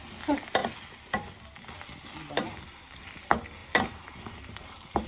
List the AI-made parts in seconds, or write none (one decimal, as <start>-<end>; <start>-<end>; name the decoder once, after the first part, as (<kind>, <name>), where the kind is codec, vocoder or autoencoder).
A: 3.6-5.1 (vocoder, BigVGAN v2)